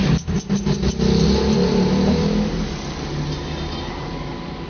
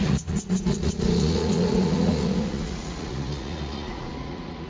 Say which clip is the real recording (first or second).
first